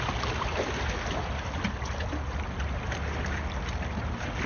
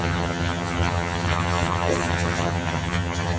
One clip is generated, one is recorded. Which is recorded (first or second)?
first